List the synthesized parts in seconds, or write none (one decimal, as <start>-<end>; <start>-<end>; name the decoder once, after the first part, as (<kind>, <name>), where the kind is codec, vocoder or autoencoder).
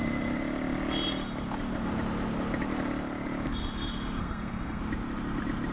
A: 4.2-4.8 (codec, SNAC)